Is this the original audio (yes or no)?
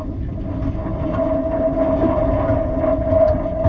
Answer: yes